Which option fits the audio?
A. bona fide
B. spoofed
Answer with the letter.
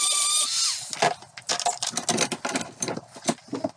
A